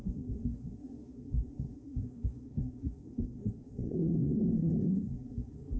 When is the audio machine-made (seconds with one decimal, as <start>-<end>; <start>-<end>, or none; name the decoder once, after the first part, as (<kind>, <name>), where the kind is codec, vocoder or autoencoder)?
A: 0.0-5.8 (codec, SNAC)